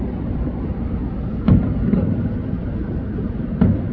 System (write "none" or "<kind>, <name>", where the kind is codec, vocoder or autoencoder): none